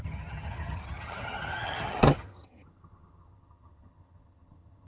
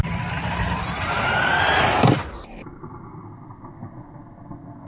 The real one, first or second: second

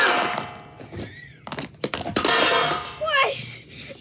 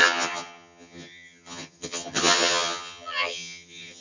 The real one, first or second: first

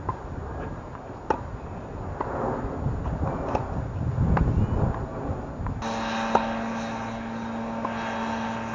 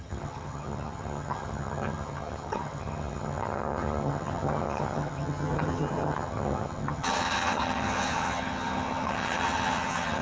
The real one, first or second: first